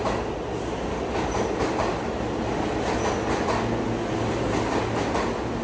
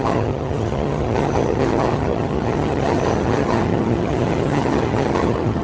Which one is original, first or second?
first